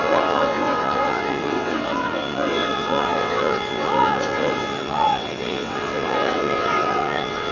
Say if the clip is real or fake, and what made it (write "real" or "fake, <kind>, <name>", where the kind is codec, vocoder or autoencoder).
fake, vocoder, WaveNeXt